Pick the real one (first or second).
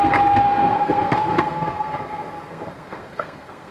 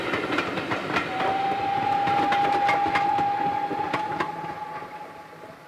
second